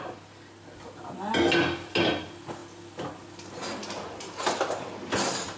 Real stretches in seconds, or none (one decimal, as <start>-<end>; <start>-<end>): 0.0-5.6